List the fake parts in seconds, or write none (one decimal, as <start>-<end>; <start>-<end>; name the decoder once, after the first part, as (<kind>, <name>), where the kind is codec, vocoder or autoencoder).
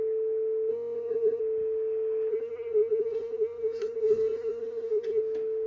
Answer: 0.7-1.4 (codec, SNAC); 2.3-5.2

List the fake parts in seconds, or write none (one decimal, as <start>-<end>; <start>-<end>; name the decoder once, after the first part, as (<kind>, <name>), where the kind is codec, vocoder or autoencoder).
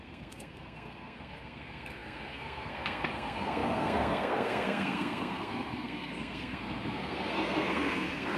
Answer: 0.0-8.4 (codec, SNAC)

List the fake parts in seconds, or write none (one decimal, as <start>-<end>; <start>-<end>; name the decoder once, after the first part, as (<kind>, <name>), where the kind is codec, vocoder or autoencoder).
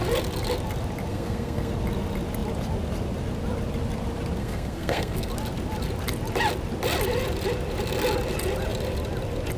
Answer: 1.1-1.7 (codec, SNAC); 4.4-5.3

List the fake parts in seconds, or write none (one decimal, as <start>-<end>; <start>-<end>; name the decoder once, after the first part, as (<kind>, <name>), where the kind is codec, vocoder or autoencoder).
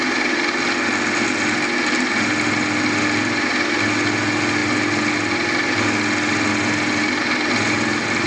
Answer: none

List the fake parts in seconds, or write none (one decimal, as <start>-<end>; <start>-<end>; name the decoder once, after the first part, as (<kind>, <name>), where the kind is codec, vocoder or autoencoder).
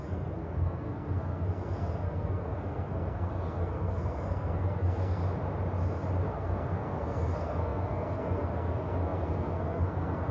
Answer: 0.0-5.2 (codec, SNAC); 6.3-10.3